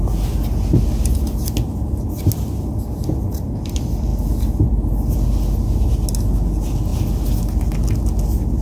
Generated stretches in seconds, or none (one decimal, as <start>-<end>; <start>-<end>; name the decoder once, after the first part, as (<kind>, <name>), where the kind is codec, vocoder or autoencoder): none